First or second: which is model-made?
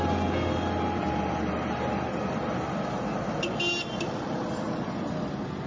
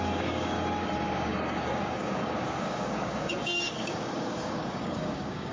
second